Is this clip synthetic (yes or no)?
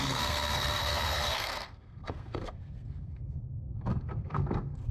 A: yes